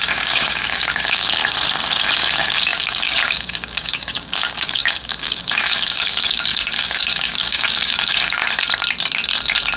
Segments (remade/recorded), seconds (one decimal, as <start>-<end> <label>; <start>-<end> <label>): 0.0-1.4 remade; 1.4-2.0 recorded; 2.0-8.4 remade; 8.4-9.8 recorded